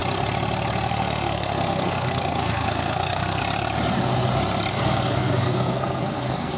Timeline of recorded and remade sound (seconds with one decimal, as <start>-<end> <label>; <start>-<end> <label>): 0.0-0.9 recorded; 0.9-3.4 remade; 3.4-4.7 recorded; 4.7-6.6 remade